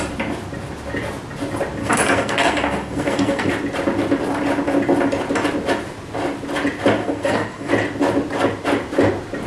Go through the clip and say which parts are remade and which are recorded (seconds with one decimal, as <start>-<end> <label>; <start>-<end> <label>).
0.0-1.8 recorded; 1.8-3.5 remade; 3.5-7.0 recorded; 7.0-7.7 remade; 7.7-9.5 recorded